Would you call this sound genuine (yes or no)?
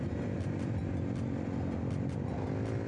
yes